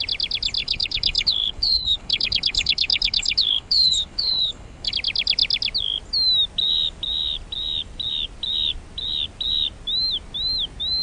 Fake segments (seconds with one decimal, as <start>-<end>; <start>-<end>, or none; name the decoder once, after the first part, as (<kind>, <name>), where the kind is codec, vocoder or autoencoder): 0.6-4.9 (codec, HILCodec)